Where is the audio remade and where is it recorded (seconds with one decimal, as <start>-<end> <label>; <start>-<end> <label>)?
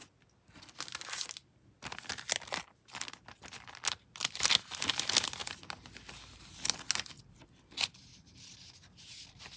0.0-9.6 recorded